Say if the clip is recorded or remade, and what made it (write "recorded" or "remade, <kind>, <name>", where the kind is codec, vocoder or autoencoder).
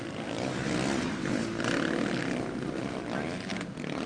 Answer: recorded